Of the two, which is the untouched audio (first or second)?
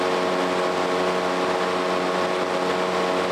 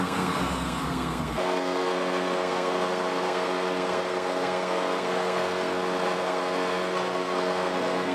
first